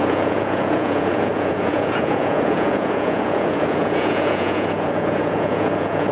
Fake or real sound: fake